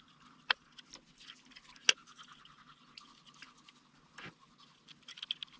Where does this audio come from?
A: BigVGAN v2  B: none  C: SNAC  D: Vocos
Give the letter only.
B